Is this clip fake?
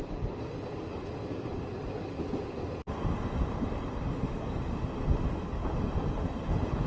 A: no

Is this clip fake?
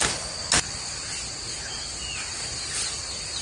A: no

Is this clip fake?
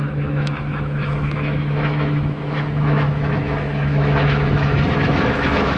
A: yes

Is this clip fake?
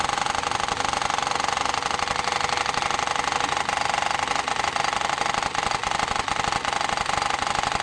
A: no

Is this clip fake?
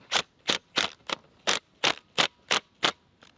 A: no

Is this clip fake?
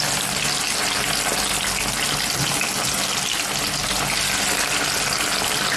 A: no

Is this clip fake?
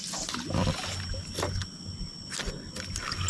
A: no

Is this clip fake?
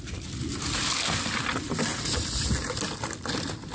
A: no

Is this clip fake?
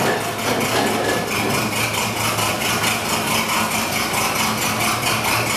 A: no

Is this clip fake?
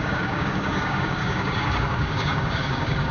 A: yes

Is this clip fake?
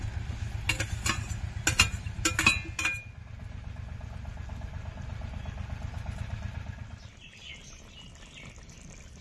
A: no